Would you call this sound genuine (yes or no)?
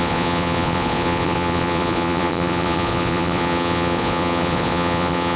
no